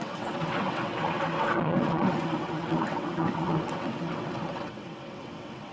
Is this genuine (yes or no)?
no